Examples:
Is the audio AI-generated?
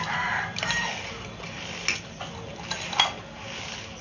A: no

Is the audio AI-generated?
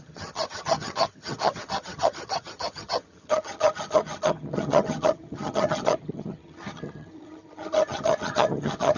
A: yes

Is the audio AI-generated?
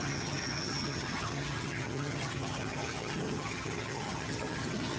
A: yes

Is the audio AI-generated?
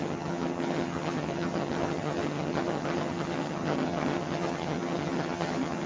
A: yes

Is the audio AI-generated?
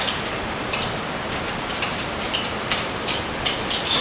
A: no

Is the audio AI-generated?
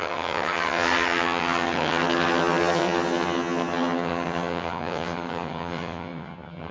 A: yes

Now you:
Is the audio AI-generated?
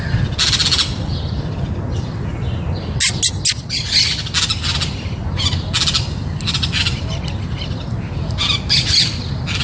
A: no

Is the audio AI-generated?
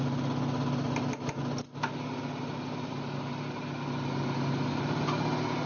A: no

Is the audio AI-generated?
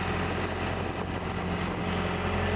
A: no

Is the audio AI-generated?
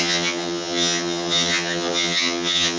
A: yes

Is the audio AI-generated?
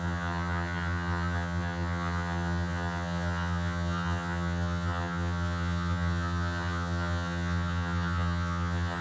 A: yes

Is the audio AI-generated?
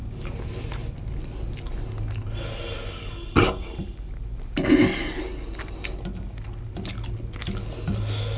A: no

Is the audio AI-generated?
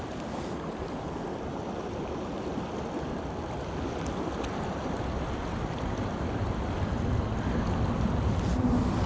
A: no